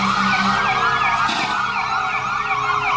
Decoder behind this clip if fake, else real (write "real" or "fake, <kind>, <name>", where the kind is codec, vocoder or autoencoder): real